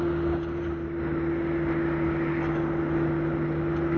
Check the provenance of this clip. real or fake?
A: real